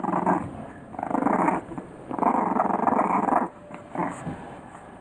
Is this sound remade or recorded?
recorded